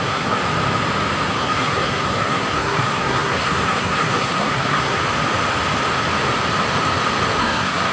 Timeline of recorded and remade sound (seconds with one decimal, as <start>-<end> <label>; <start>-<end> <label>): 0.0-0.4 remade; 0.4-1.3 recorded; 1.3-5.0 remade; 5.0-7.4 recorded; 7.4-7.9 remade